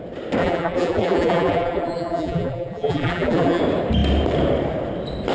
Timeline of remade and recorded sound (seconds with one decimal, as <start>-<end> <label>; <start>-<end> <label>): 0.0-0.4 recorded; 0.4-3.6 remade; 3.6-5.3 recorded